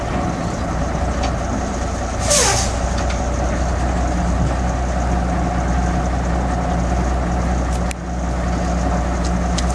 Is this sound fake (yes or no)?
no